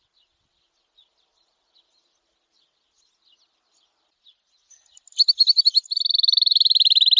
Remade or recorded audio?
recorded